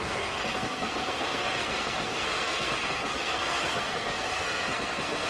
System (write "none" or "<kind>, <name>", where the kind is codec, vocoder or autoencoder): codec, SNAC